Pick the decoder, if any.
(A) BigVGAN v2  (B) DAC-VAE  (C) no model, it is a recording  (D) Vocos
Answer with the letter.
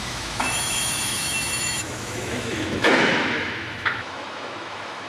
B